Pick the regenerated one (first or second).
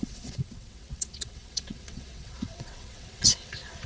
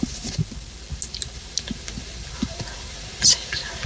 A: first